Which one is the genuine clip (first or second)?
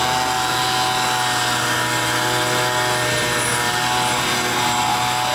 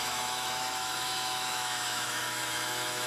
first